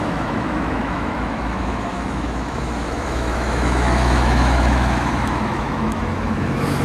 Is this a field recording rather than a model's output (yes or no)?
no